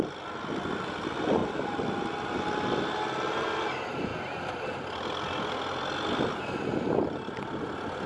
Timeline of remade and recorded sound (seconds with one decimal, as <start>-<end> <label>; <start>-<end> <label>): 0.0-4.1 recorded; 4.1-7.6 remade; 7.6-8.1 recorded